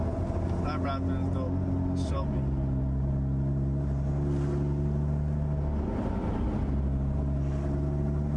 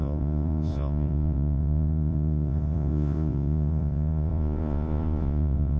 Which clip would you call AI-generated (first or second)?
second